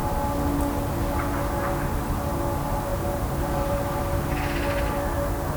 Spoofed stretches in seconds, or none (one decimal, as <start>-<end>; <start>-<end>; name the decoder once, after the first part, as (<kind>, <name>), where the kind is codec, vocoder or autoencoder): 2.9-4.0 (vocoder, BigVGAN v2)